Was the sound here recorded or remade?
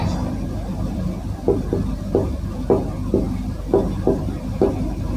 recorded